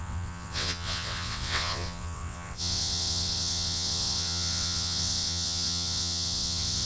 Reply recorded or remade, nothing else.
remade